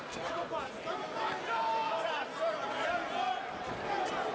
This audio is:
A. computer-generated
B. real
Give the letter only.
B